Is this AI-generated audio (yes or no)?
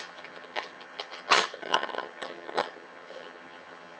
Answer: yes